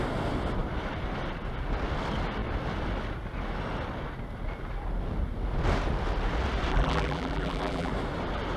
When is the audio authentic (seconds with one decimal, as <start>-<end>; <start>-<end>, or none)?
0.0-6.7; 7.9-8.6